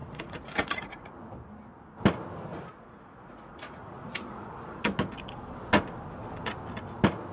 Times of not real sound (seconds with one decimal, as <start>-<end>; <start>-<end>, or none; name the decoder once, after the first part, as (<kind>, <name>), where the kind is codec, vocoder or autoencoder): 0.0-1.1 (vocoder, Vocos); 2.5-4.8